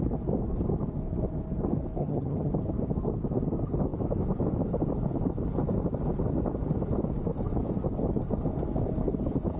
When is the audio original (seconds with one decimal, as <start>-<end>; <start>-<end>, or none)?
0.0-2.0; 2.5-9.6